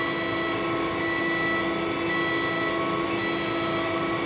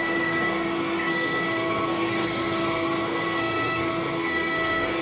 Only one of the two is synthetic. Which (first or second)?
second